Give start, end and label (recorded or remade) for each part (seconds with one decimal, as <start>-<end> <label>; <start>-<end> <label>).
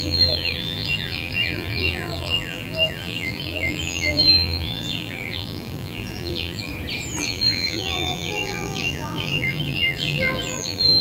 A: 0.0-6.7 remade; 6.7-7.2 recorded; 7.2-11.0 remade